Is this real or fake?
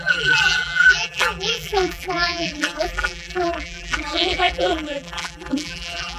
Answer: fake